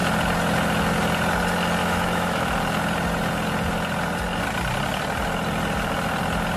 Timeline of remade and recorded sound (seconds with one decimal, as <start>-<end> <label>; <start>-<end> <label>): 0.0-1.8 recorded; 1.8-2.5 remade; 2.5-6.6 recorded